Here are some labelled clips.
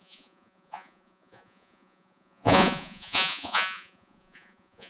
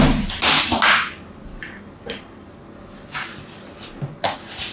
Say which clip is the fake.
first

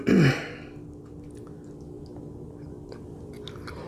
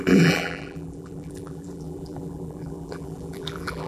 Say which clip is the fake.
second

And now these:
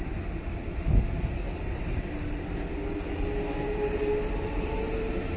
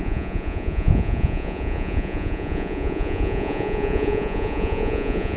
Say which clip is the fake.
second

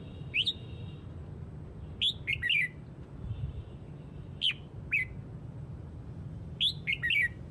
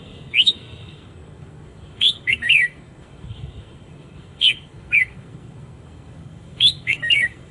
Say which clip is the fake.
second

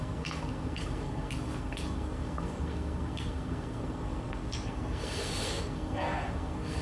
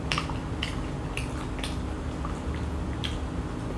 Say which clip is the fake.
first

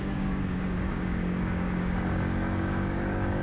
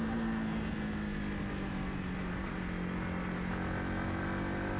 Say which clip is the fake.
first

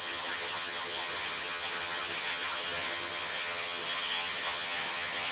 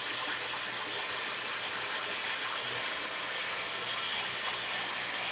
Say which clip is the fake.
first